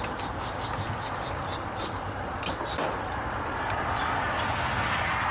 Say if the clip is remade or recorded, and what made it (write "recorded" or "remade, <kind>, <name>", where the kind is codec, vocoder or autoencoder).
recorded